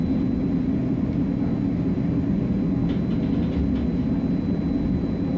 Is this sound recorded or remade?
recorded